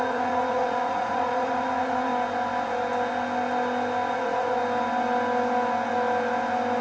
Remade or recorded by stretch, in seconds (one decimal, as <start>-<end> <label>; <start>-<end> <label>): 0.0-2.1 remade; 2.1-4.1 recorded; 4.1-4.6 remade; 4.6-6.8 recorded